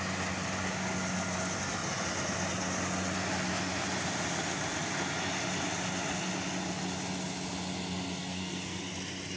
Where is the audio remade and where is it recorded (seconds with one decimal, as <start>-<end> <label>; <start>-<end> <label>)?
0.0-8.2 recorded; 8.2-8.8 remade; 8.8-9.4 recorded